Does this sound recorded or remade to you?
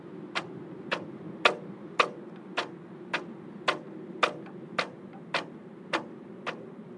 recorded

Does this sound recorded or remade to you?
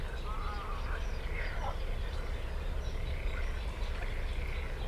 recorded